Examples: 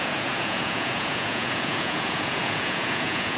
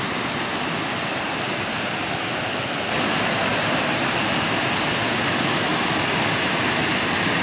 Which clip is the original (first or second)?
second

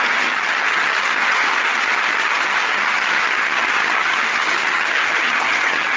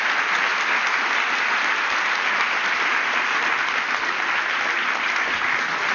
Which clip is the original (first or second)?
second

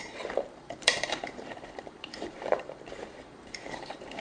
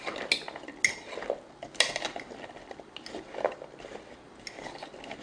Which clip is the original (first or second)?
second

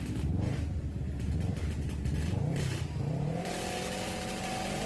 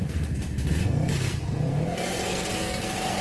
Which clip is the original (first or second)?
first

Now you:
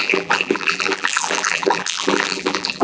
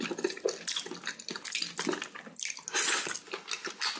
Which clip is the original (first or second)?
second